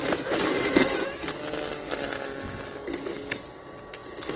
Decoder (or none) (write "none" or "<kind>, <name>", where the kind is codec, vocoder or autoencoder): none